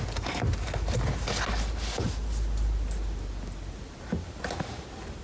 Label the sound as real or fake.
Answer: real